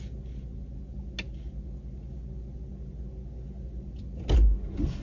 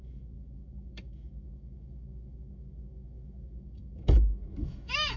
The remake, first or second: second